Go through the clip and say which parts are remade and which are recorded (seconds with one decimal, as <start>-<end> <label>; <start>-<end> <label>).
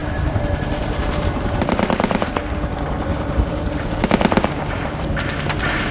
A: 0.0-2.3 remade; 2.3-3.1 recorded; 3.1-3.9 remade; 3.9-5.9 recorded